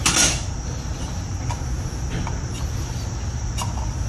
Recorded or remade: recorded